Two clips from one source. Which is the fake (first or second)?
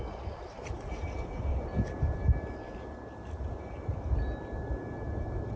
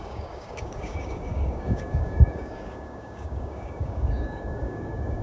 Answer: second